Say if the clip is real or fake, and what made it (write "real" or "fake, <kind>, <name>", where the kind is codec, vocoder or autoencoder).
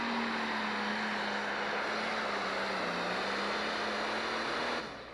real